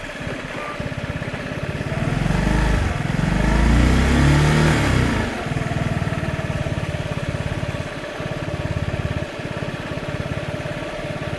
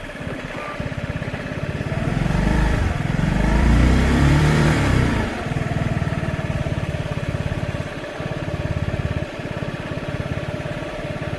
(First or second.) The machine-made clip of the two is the second